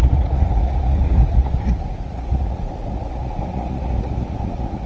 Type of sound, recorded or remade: remade